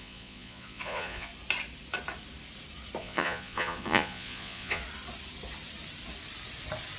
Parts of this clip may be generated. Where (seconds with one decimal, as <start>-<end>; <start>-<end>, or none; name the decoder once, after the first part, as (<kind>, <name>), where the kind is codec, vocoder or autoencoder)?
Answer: 0.0-1.3 (vocoder, Vocos); 3.0-4.8